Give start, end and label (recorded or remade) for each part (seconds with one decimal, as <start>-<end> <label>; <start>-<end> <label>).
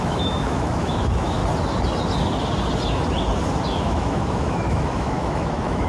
0.0-1.4 remade; 1.4-3.8 recorded; 3.8-5.9 remade